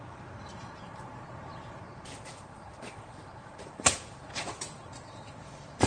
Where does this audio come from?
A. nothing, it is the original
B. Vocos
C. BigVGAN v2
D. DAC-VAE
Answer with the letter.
C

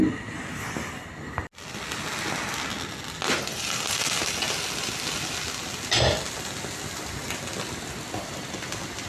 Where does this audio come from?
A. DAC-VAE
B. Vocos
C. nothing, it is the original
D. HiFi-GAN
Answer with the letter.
C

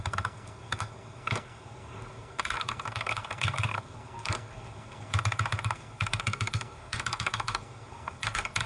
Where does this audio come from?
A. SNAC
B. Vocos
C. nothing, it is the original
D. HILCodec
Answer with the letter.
A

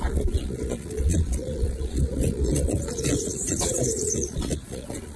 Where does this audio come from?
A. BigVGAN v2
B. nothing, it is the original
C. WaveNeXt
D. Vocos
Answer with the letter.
D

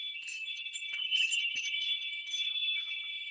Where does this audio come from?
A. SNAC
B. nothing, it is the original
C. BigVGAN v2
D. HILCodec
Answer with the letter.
D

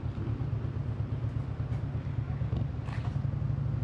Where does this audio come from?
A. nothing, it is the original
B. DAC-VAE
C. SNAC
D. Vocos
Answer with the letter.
A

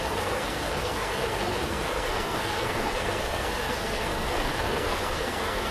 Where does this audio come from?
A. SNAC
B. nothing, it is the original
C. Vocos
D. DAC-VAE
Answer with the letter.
A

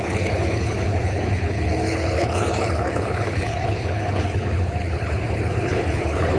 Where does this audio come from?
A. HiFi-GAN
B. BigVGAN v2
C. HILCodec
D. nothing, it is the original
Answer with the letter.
C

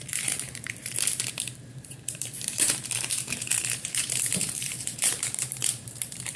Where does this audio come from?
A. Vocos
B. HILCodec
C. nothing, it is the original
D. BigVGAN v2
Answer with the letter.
D